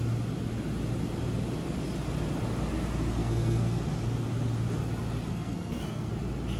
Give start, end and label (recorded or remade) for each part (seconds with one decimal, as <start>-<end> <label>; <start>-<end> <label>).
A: 0.0-3.2 recorded; 3.2-3.8 remade; 3.8-5.3 recorded; 5.3-6.1 remade; 6.1-6.6 recorded